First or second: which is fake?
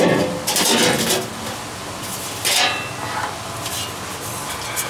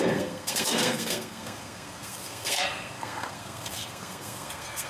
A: second